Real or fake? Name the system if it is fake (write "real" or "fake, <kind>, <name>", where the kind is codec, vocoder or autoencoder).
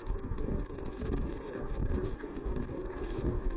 fake, codec, DAC